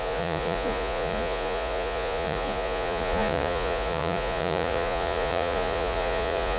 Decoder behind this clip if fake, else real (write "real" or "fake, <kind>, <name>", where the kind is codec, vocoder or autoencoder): fake, vocoder, Vocos